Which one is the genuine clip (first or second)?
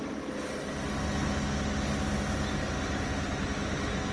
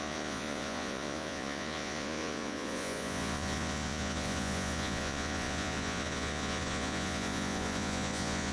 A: first